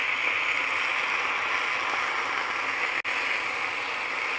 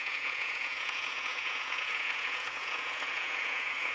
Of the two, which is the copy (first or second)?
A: second